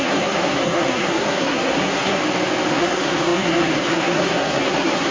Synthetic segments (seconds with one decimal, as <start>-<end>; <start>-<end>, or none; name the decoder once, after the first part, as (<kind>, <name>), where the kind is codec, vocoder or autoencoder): 0.0-2.2 (codec, SNAC); 2.7-5.1